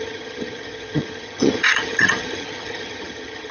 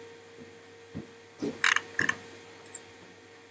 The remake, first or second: first